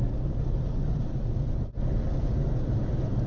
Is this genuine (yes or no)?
yes